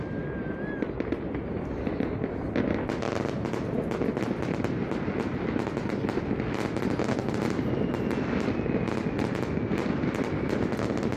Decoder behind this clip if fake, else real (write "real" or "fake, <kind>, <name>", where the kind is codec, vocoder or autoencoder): real